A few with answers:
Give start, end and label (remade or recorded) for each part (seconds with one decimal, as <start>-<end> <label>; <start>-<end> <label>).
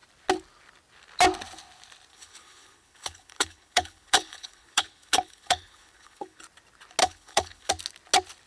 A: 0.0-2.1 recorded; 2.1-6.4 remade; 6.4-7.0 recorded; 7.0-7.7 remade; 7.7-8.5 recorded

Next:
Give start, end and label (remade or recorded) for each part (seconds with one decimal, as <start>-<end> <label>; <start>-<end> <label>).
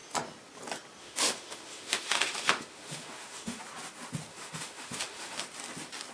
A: 0.0-1.0 recorded; 1.0-3.6 remade; 3.6-4.3 recorded; 4.3-5.4 remade; 5.4-6.1 recorded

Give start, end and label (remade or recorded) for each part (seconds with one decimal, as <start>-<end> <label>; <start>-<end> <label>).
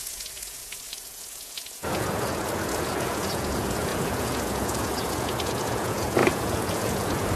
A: 0.0-7.4 remade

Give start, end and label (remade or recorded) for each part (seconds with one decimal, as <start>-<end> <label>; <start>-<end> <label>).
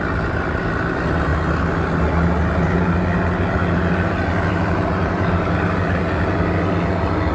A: 0.0-7.3 recorded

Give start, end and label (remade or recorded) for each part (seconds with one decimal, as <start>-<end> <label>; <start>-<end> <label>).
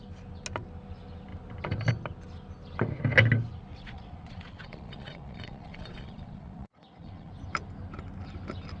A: 0.0-3.7 recorded; 3.7-7.3 remade; 7.3-8.8 recorded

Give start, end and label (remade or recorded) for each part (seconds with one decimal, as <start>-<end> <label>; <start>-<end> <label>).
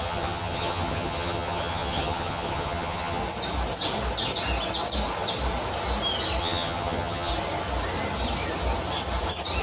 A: 0.0-3.2 remade; 3.2-6.4 recorded; 6.4-7.3 remade; 7.3-9.6 recorded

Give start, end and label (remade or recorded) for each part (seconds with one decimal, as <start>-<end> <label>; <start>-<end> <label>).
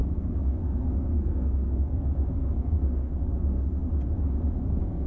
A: 0.0-3.9 remade; 3.9-4.6 recorded; 4.6-5.1 remade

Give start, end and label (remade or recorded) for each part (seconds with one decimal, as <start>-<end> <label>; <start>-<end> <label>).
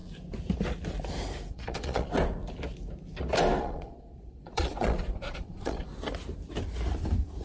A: 0.0-1.5 recorded; 1.5-2.1 remade; 2.1-3.6 recorded; 3.6-5.9 remade; 5.9-7.4 recorded